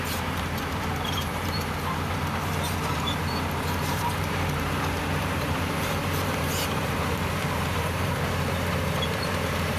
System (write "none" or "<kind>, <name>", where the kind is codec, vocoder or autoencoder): vocoder, BigVGAN v2